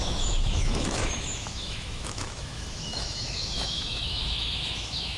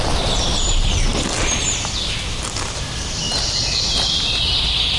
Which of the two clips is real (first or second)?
second